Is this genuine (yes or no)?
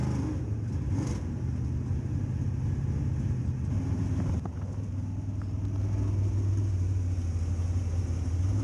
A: yes